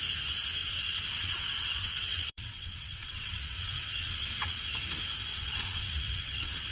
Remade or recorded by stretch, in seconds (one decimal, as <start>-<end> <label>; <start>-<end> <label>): 0.0-0.6 recorded; 0.6-4.6 remade; 4.6-5.3 recorded; 5.3-6.7 remade